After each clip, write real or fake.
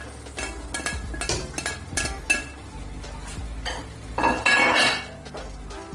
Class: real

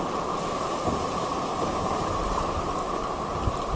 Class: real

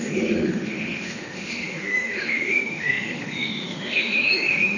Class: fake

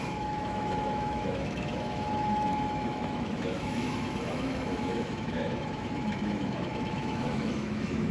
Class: fake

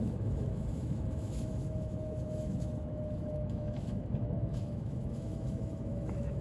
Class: fake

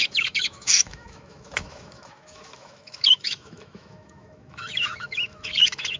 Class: fake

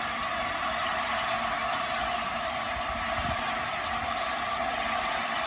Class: real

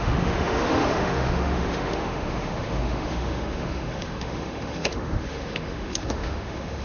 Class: fake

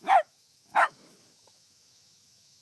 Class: fake